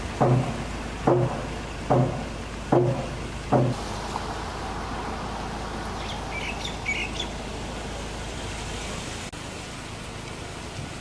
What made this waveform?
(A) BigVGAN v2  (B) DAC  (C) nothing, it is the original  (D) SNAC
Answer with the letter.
C